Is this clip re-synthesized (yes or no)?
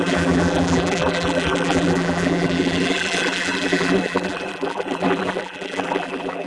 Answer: yes